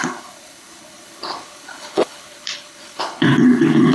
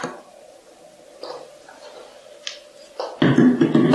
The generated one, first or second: first